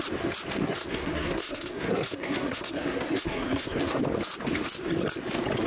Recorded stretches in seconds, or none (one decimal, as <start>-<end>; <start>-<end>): 0.0-0.6; 4.0-5.7

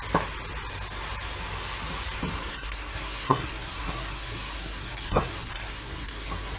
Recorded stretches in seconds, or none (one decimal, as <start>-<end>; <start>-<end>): 0.0-2.5

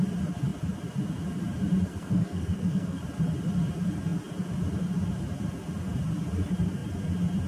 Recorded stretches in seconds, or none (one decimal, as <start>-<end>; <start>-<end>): 0.0-1.9; 3.0-7.5

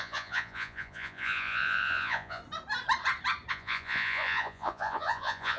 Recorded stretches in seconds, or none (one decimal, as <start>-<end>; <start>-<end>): 2.4-3.5